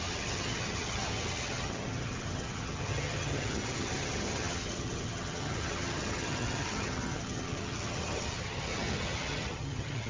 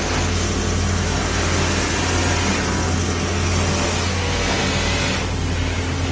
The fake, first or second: first